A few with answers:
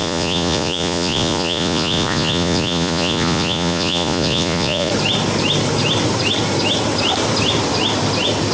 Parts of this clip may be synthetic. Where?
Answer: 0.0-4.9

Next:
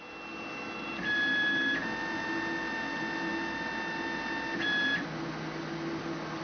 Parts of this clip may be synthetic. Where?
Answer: none

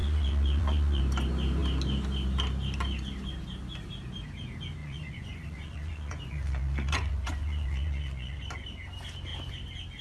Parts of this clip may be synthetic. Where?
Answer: 0.0-1.0; 4.8-8.4

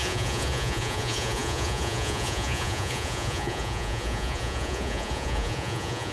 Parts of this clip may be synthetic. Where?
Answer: 0.0-6.1

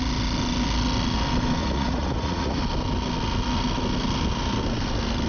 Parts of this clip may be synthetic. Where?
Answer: 1.6-2.6

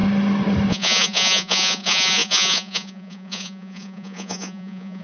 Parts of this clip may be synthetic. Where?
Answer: 0.7-5.0

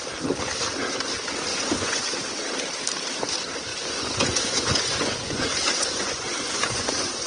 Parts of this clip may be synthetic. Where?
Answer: 1.5-2.2; 3.7-7.3